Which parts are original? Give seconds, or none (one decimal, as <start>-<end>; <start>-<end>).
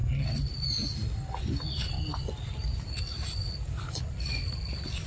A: 0.0-5.1